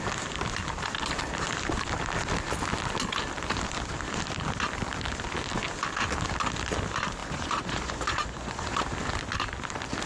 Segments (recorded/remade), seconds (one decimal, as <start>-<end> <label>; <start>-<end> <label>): 0.0-7.2 recorded; 7.2-8.8 remade; 8.8-10.1 recorded